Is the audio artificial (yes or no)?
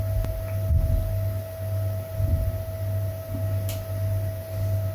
no